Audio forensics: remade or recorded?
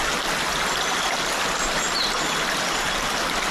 recorded